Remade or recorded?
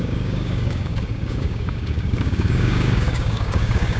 remade